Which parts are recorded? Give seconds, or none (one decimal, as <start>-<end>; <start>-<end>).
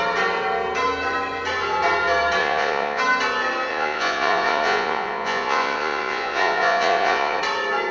0.0-2.4; 3.0-3.7; 7.4-7.9